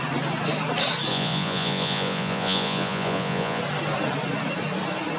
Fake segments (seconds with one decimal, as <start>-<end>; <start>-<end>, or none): 1.1-3.6

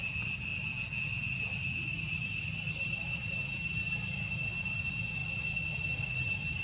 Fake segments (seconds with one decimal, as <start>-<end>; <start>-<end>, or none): none

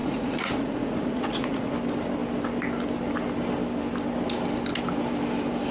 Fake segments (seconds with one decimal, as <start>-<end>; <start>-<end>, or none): 0.0-1.7